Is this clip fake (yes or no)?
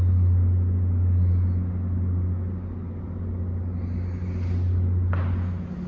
no